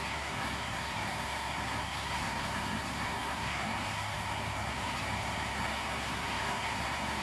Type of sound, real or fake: fake